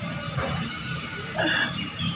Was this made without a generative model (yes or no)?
no